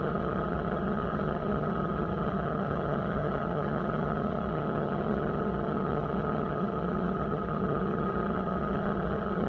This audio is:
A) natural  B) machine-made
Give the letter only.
B